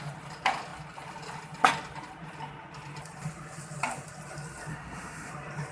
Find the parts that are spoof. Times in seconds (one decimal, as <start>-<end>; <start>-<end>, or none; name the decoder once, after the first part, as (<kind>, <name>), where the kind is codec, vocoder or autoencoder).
4.7-5.3 (autoencoder, DAC-VAE)